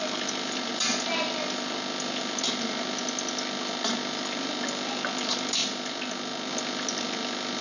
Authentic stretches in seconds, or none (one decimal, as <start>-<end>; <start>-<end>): 0.0-7.6